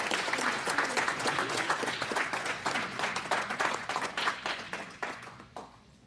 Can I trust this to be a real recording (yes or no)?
no